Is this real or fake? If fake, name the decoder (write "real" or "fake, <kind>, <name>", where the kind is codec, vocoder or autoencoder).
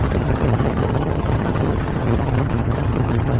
fake, vocoder, HiFi-GAN